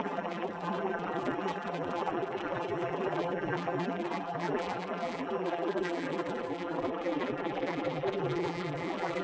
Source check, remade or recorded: remade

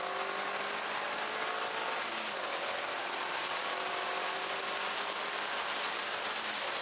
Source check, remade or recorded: recorded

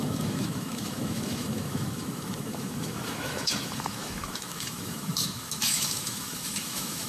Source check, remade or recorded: remade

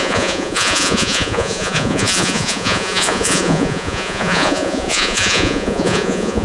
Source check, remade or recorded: remade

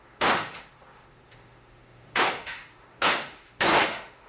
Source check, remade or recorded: remade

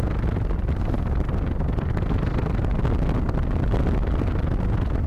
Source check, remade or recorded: recorded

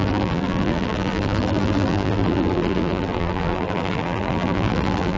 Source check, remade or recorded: remade